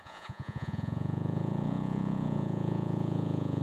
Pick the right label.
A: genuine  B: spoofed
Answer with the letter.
B